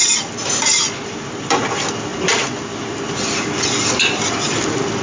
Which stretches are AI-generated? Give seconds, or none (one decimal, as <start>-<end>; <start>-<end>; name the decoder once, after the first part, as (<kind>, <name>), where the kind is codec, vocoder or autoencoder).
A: none